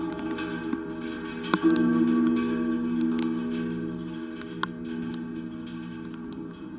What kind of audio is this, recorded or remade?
recorded